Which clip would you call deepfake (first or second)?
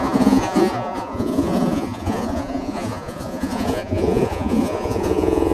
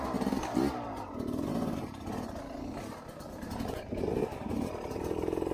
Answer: first